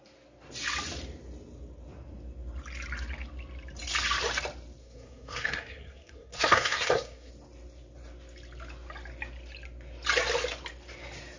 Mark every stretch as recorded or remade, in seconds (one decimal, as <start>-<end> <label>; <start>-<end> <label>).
0.0-4.8 recorded; 4.8-7.3 remade; 7.3-11.4 recorded